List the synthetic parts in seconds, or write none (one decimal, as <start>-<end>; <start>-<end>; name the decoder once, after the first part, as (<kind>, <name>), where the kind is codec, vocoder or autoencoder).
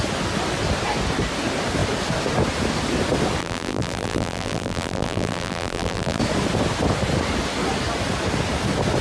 3.4-6.2 (vocoder, BigVGAN v2)